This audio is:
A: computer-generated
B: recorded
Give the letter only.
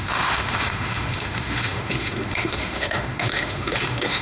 A